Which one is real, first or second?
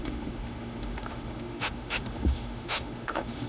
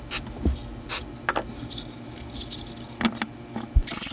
second